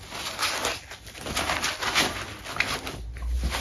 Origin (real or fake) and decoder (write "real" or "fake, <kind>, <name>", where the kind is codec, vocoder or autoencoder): real